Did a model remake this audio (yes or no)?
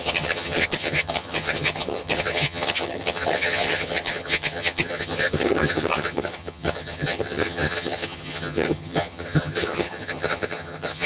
yes